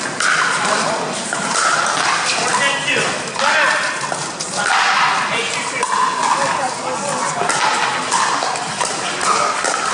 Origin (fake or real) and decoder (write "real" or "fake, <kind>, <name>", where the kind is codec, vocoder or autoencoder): real